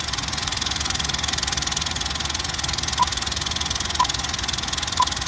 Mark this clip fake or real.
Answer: fake